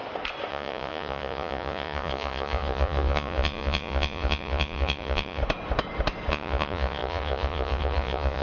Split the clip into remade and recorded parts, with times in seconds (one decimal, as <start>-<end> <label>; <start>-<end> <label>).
0.0-0.5 recorded; 0.5-5.4 remade; 5.4-6.3 recorded; 6.3-8.4 remade